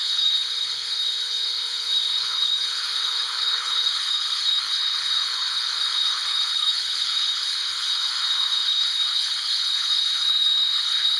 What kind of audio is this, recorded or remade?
remade